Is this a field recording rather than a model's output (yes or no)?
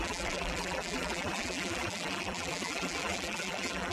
no